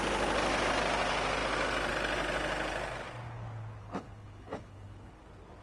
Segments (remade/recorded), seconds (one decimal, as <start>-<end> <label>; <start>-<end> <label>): 0.0-3.8 recorded; 3.8-5.1 remade; 5.1-5.6 recorded